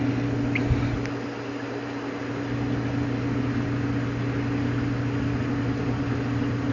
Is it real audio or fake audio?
real